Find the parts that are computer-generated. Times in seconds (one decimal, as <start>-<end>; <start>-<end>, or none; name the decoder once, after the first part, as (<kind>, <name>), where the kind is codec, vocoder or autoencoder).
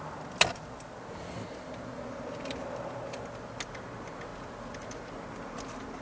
none